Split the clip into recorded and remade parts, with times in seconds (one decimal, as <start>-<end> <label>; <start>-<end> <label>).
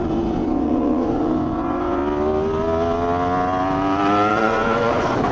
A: 0.0-2.0 remade; 2.0-4.3 recorded; 4.3-5.3 remade